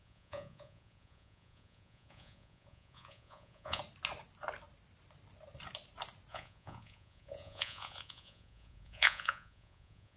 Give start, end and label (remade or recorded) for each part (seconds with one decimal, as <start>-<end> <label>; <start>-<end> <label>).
0.0-3.8 remade; 3.8-6.3 recorded; 6.3-10.2 remade